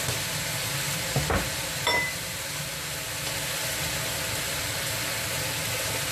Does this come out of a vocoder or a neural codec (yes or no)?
no